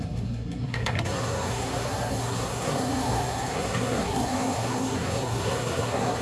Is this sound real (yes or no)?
no